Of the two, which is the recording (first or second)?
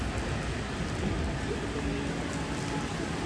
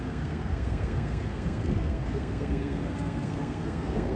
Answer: first